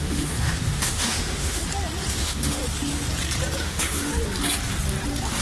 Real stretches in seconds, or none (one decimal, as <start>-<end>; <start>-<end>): 1.6-2.1; 2.6-3.6; 4.1-5.4